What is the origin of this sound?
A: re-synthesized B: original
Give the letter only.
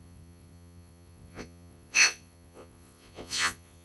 A